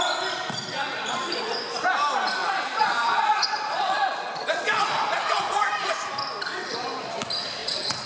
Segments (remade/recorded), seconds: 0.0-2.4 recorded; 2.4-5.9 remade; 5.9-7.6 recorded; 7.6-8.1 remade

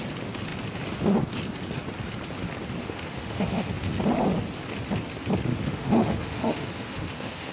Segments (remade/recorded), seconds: 0.0-2.8 recorded; 2.8-3.7 remade; 3.7-5.5 recorded; 5.5-7.5 remade